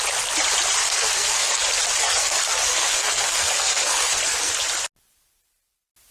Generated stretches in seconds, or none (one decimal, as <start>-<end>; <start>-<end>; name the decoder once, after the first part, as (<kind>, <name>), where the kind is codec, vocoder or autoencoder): 0.8-1.6 (codec, SNAC); 2.0-4.5